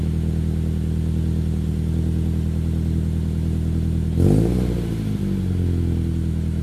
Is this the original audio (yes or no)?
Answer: yes